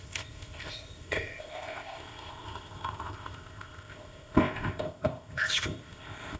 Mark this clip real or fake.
fake